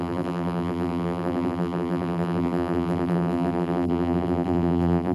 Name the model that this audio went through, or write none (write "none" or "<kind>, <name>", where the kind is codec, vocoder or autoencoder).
vocoder, BigVGAN v2